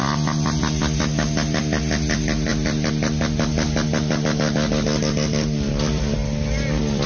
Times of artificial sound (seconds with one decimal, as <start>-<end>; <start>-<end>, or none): none